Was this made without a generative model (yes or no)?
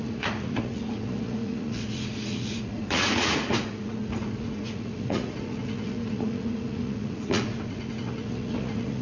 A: no